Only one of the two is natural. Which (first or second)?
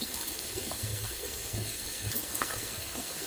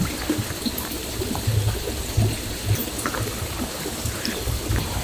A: second